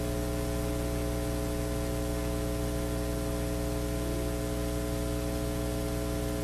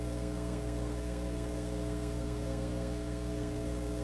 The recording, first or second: first